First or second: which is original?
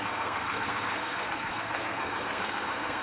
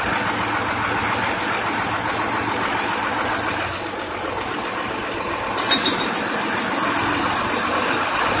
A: second